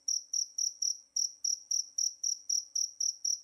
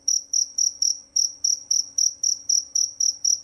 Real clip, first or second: first